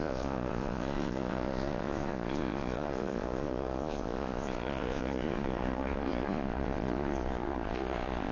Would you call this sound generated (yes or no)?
yes